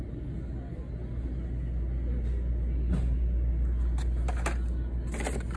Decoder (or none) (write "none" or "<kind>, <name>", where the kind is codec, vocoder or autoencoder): none